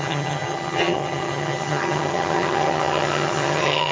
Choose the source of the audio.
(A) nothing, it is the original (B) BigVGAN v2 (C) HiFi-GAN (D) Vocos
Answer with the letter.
C